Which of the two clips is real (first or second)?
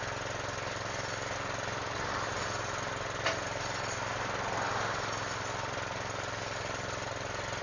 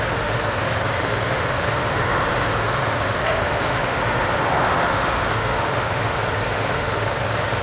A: first